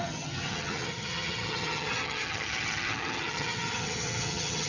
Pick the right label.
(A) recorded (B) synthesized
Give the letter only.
B